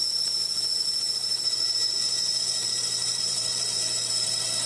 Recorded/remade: remade